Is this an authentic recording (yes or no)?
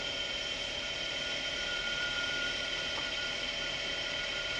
no